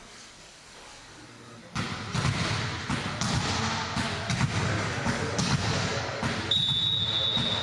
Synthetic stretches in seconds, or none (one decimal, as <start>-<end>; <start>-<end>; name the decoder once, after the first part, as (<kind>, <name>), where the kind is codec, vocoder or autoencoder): 0.0-1.6 (codec, DAC); 4.8-6.2